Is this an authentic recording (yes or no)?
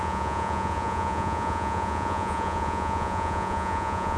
no